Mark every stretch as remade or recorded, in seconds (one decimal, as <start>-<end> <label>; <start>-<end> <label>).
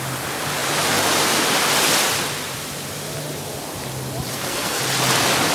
0.0-4.3 recorded; 4.3-4.8 remade; 4.8-5.5 recorded